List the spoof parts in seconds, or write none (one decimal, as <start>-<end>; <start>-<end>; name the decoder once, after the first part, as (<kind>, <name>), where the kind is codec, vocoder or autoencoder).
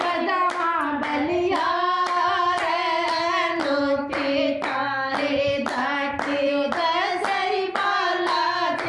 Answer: none